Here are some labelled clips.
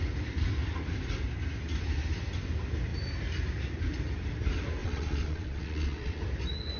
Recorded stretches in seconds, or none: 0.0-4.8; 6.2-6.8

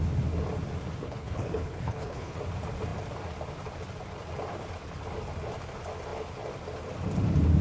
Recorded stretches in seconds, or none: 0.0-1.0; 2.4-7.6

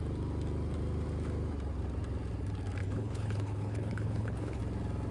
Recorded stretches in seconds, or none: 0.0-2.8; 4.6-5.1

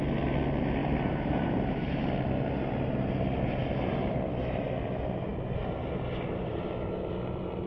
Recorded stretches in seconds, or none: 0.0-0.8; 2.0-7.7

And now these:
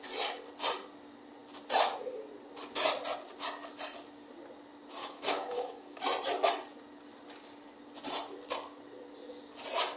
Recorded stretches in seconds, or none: 0.0-5.0; 6.0-10.0

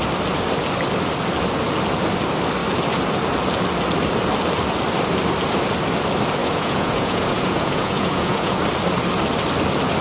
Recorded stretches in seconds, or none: 0.0-6.4; 8.6-10.0